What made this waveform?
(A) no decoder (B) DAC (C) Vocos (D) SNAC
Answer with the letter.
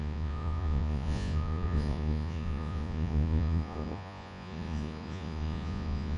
C